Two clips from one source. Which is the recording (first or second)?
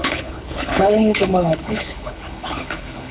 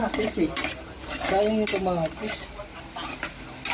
second